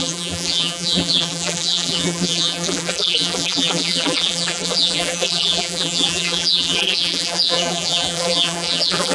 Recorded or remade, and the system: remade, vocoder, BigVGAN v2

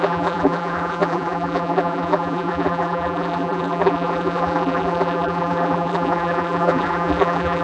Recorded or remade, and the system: remade, vocoder, BigVGAN v2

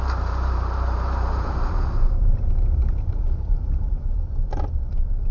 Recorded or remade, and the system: remade, vocoder, BigVGAN v2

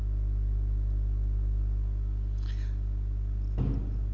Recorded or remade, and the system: recorded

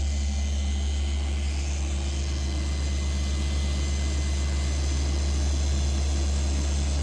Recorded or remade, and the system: recorded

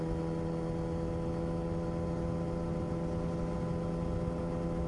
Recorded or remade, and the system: recorded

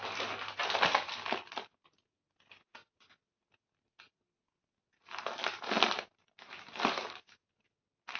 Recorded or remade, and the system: recorded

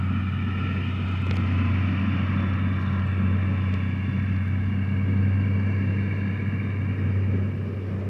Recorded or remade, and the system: recorded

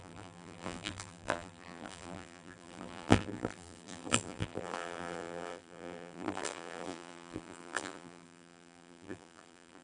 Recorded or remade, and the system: remade, vocoder, BigVGAN v2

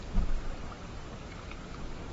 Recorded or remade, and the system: remade, vocoder, BigVGAN v2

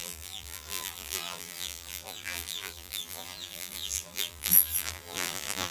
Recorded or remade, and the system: remade, vocoder, BigVGAN v2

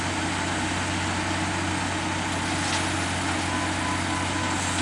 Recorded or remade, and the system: recorded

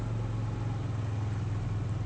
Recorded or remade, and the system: recorded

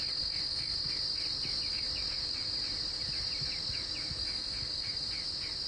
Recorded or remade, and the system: recorded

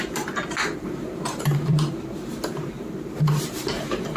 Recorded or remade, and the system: remade, vocoder, BigVGAN v2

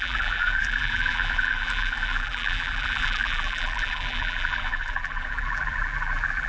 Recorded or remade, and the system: remade, vocoder, BigVGAN v2